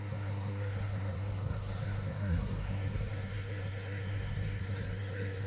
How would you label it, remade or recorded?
remade